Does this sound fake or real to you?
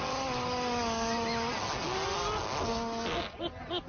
real